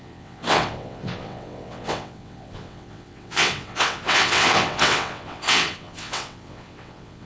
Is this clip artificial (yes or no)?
yes